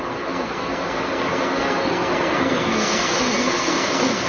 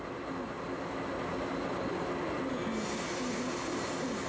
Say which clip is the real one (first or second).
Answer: second